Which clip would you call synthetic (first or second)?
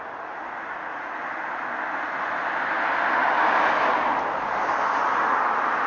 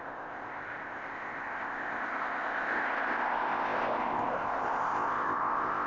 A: second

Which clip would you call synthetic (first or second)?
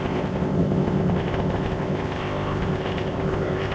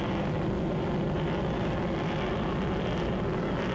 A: first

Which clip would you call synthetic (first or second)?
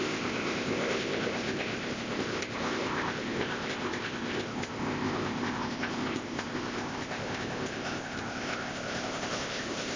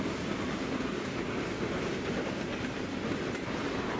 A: first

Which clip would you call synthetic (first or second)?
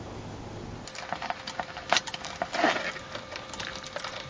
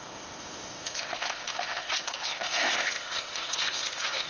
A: second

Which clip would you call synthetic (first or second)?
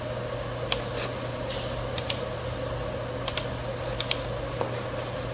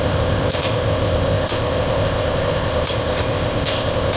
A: second